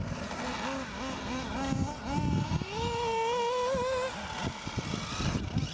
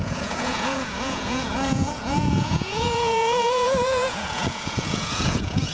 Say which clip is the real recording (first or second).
first